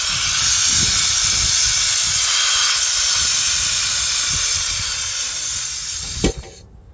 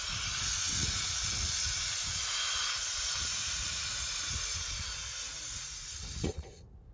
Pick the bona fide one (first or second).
first